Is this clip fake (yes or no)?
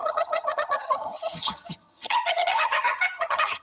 yes